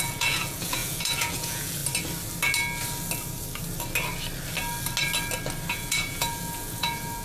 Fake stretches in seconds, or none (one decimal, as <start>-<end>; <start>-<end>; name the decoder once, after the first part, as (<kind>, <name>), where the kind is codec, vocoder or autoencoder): 0.0-1.8 (vocoder, Vocos); 5.7-7.2